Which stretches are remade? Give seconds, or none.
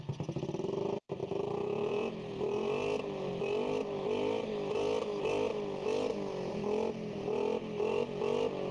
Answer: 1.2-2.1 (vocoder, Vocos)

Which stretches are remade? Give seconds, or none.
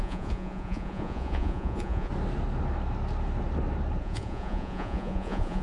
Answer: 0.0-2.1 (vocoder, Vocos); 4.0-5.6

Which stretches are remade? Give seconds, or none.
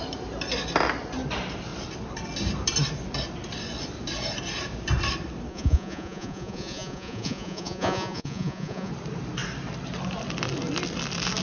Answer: 5.5-8.9 (vocoder, Vocos)